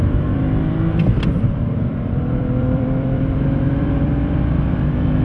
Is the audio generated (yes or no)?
yes